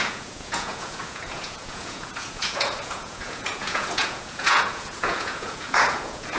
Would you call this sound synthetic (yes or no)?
yes